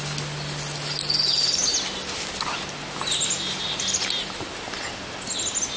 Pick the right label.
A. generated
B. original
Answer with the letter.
B